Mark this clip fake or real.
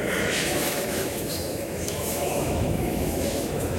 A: fake